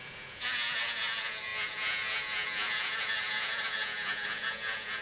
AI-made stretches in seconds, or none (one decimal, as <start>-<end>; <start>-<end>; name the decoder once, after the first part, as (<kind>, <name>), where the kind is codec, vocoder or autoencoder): 0.0-5.0 (vocoder, Vocos)